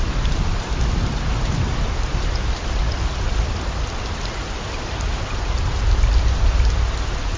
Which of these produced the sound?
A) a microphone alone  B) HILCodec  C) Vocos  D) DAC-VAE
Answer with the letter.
A